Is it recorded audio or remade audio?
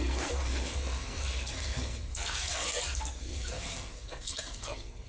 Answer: remade